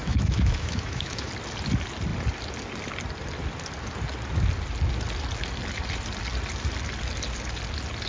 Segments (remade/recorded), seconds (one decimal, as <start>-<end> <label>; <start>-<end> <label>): 0.0-1.3 remade; 1.3-8.1 recorded